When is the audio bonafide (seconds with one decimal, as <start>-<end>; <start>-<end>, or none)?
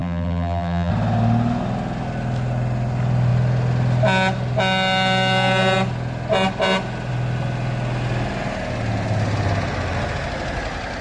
0.9-11.0